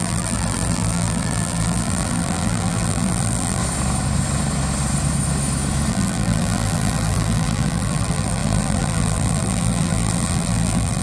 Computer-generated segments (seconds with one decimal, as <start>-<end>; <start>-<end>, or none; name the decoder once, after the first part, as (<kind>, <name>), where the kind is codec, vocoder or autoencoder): 0.0-3.6 (vocoder, BigVGAN v2); 5.9-11.0